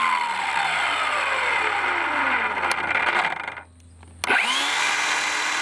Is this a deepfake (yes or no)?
no